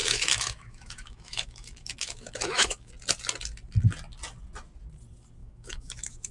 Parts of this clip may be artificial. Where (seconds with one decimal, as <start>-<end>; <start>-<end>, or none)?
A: 0.0-2.9; 5.4-6.3